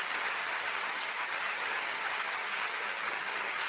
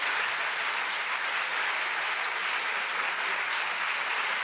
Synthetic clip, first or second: first